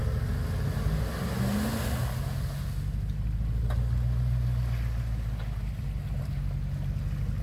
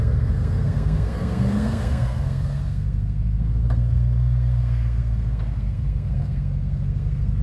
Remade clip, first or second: second